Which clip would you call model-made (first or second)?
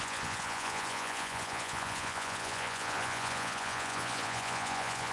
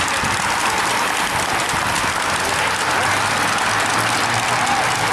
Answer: first